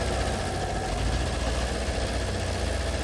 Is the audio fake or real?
real